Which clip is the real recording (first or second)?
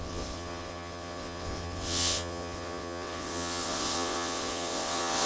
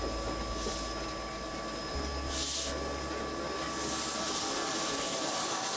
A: second